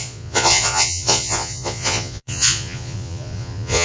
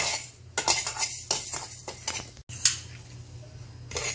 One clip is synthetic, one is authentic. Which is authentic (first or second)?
second